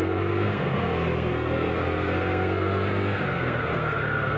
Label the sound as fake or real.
fake